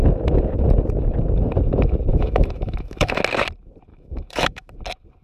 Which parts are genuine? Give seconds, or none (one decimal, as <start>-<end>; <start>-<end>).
0.0-2.1; 3.2-3.9; 4.7-5.2